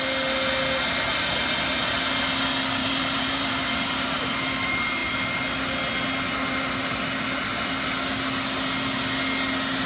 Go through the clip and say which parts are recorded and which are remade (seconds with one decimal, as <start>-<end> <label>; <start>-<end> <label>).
0.0-2.8 recorded; 2.8-4.2 remade; 4.2-9.9 recorded

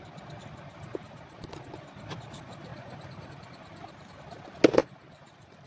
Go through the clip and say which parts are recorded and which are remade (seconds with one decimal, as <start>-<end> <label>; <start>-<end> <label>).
0.0-2.7 recorded; 2.7-3.3 remade; 3.3-4.8 recorded; 4.8-5.7 remade

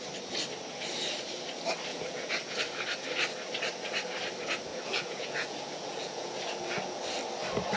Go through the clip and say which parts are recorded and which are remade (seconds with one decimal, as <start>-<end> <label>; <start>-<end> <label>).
0.0-1.9 recorded; 1.9-2.6 remade; 2.6-4.7 recorded; 4.7-7.0 remade; 7.0-7.8 recorded

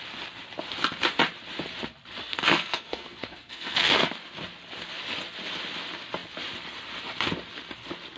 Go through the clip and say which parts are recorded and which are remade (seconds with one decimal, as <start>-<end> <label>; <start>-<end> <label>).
0.0-2.2 recorded; 2.2-4.1 remade; 4.1-8.2 recorded

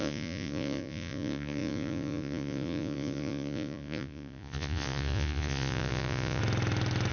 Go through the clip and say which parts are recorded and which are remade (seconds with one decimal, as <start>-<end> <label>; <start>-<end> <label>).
0.0-6.4 remade; 6.4-7.1 recorded

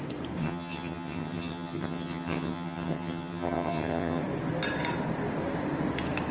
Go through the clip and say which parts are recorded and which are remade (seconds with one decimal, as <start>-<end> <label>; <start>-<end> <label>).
0.0-0.4 recorded; 0.4-4.2 remade; 4.2-6.3 recorded

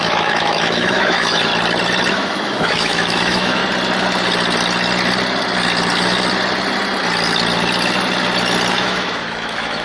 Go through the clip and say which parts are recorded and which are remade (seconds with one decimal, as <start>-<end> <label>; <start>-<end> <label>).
0.0-1.5 remade; 1.5-2.1 recorded; 2.1-3.6 remade; 3.6-8.7 recorded; 8.7-9.8 remade

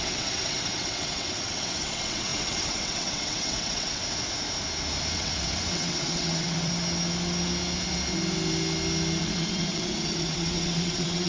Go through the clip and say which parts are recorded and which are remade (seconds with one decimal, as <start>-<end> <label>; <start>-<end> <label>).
0.0-4.0 remade; 4.0-5.1 recorded; 5.1-6.7 remade; 6.7-9.2 recorded; 9.2-11.3 remade